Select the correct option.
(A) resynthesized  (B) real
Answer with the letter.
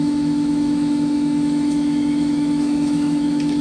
A